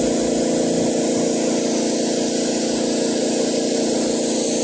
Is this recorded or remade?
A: recorded